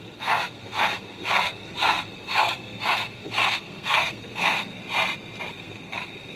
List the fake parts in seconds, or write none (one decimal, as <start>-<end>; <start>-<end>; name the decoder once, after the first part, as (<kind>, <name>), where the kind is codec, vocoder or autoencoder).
0.0-4.8 (codec, SNAC); 5.5-6.4